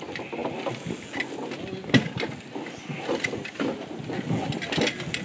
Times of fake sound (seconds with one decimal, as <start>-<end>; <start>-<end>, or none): none